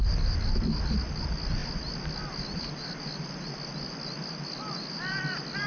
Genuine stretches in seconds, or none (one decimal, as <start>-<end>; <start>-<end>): 0.0-5.7